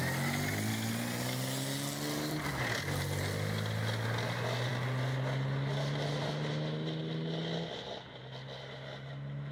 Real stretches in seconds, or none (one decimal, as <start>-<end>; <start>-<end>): 0.0-9.5